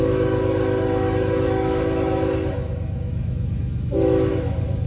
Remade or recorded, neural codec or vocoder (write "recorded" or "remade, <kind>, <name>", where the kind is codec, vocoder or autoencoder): remade, autoencoder, DAC-VAE